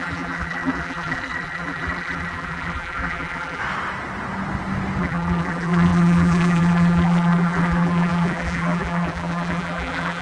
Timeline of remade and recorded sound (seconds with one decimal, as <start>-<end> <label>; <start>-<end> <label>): 0.0-3.6 remade; 3.6-5.0 recorded; 5.0-10.2 remade